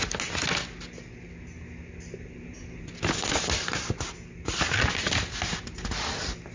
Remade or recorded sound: recorded